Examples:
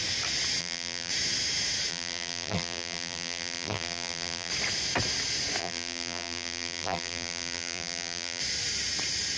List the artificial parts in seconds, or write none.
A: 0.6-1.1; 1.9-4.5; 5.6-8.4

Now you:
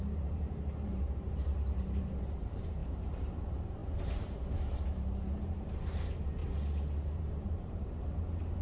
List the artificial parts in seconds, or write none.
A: 0.0-6.4; 7.2-8.6

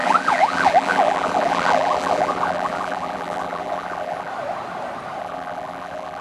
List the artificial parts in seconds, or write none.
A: 0.0-4.3; 5.2-6.2

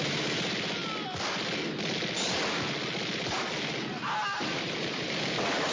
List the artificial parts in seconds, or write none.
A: 0.0-0.8; 4.2-5.7

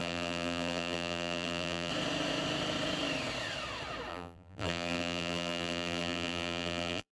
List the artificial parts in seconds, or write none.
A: 0.0-1.9; 4.1-7.1

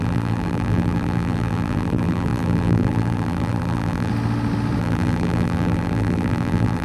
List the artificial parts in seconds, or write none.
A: 0.0-4.1; 4.8-6.8

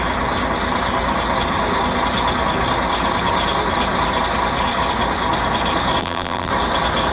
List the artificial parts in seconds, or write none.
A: 6.0-6.5

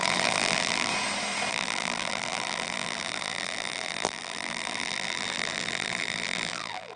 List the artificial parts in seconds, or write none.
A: 0.0-0.9; 1.5-7.0